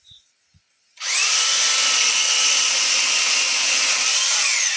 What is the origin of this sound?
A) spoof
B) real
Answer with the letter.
B